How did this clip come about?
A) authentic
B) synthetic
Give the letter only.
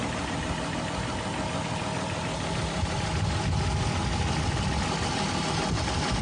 A